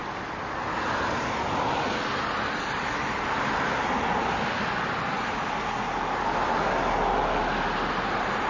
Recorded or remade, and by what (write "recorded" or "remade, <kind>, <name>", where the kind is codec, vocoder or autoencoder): recorded